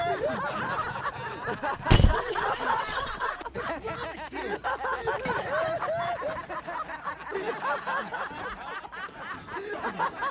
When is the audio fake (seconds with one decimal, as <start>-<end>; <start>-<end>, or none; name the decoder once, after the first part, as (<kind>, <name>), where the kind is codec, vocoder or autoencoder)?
2.1-3.3 (vocoder, WaveNeXt)